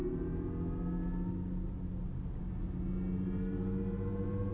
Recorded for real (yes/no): yes